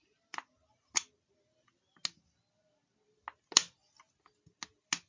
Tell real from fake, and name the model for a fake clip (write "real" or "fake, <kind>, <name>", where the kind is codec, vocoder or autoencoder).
real